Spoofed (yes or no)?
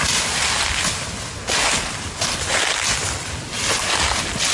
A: no